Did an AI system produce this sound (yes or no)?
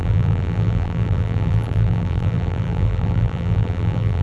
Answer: yes